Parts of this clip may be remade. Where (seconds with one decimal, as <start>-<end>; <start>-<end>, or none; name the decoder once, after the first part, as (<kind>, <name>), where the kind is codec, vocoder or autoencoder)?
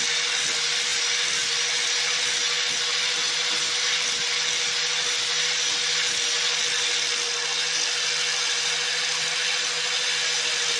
none